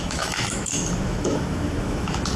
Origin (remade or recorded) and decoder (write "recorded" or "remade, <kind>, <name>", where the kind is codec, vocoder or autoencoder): remade, autoencoder, DAC-VAE